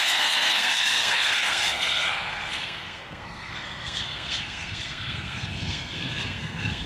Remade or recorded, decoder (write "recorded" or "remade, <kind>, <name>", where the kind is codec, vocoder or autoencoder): remade, codec, SNAC